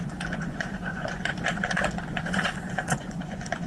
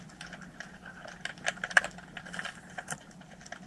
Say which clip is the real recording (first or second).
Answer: second